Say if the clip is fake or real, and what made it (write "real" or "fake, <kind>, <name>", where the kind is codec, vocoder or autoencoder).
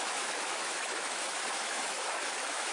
fake, autoencoder, DAC-VAE